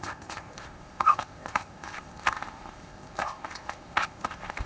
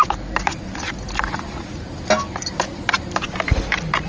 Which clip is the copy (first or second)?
first